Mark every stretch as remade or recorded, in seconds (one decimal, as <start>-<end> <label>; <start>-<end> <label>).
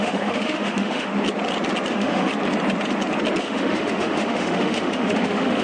0.0-1.1 remade; 1.1-1.9 recorded; 1.9-2.3 remade; 2.3-3.4 recorded; 3.4-5.6 remade